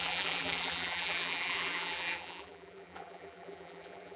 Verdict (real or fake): fake